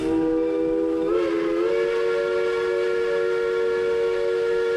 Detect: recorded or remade recorded